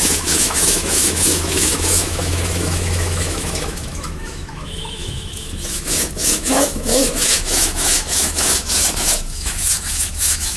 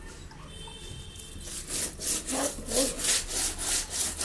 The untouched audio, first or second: second